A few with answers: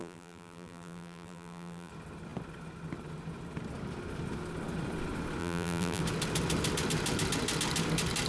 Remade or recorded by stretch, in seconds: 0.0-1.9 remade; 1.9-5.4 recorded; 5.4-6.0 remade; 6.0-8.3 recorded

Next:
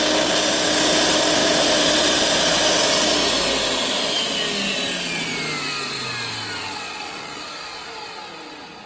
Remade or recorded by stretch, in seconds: 0.0-1.4 recorded; 1.4-2.8 remade; 2.8-8.9 recorded

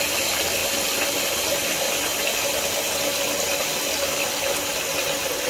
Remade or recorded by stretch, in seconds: 0.0-5.5 recorded